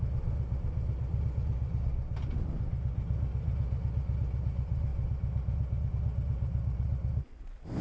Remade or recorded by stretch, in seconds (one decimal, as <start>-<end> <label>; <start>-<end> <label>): 0.0-7.8 recorded